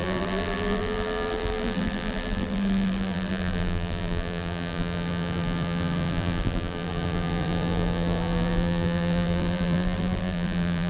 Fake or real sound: fake